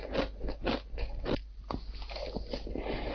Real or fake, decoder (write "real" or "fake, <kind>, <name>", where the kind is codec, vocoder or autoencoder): real